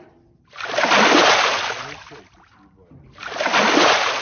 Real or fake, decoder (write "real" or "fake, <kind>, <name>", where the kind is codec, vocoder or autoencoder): real